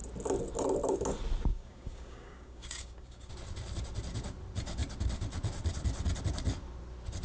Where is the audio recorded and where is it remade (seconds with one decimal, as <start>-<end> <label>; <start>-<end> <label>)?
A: 0.0-1.5 recorded; 1.5-3.3 remade; 3.3-7.2 recorded